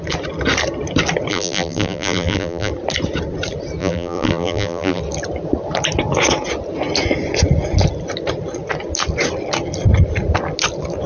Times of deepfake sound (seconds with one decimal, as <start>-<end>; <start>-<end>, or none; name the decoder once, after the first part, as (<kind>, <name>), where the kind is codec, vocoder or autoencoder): 1.3-2.7 (vocoder, BigVGAN v2); 3.8-5.0